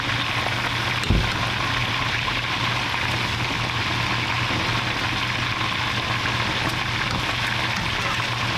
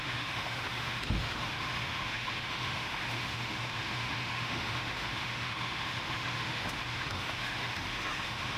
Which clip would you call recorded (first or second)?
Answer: first